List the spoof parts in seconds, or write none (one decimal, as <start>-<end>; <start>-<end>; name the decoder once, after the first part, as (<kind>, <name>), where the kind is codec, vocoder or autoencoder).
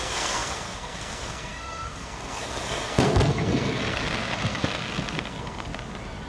0.0-5.7 (codec, SNAC)